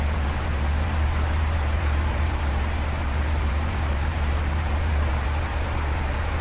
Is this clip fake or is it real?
fake